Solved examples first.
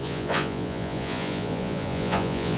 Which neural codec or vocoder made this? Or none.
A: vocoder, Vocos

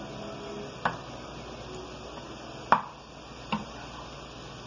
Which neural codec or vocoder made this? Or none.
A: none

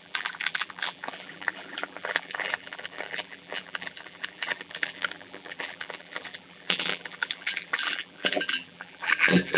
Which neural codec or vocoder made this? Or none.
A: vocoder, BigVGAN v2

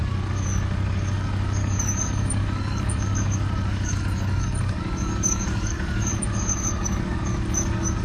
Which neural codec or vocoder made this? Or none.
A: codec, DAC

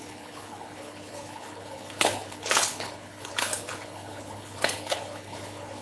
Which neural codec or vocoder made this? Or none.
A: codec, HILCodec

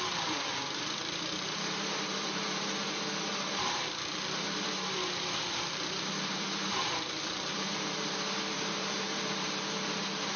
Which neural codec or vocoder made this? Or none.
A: vocoder, BigVGAN v2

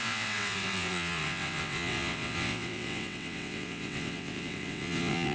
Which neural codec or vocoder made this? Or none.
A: vocoder, WaveNeXt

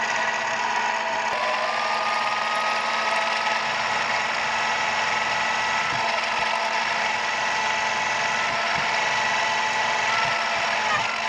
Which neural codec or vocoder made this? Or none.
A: none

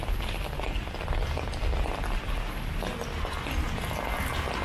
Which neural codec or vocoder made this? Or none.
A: none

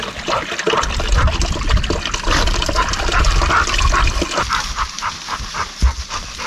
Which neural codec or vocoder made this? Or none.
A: none